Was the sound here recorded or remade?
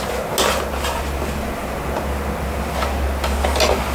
recorded